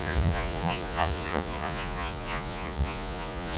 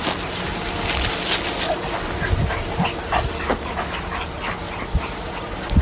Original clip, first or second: second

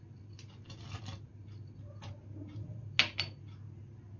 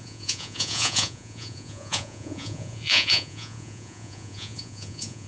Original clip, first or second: first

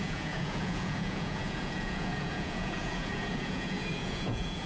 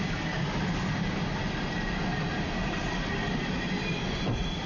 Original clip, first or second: second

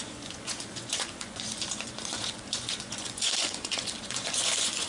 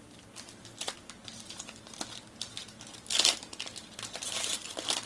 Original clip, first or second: second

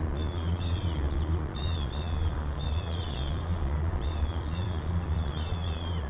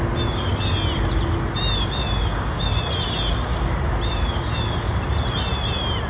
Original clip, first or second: second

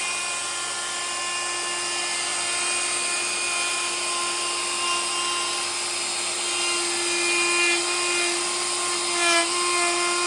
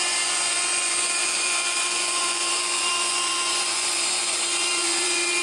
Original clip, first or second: first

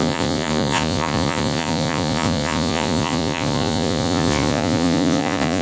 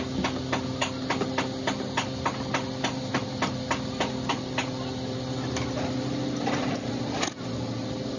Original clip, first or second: second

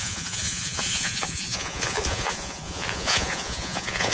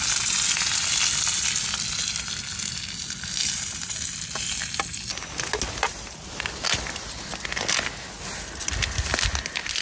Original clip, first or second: second